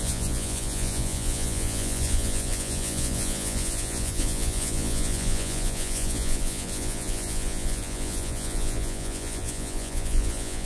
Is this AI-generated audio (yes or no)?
yes